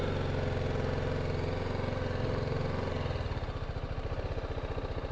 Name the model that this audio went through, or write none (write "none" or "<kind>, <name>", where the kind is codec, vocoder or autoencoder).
none